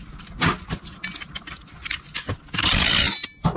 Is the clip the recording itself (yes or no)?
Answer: yes